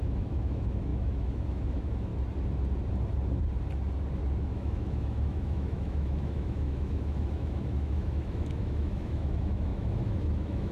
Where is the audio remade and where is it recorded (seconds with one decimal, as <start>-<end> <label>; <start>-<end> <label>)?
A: 0.0-2.1 remade; 2.1-4.4 recorded; 4.4-10.7 remade